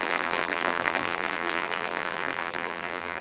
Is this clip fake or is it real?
fake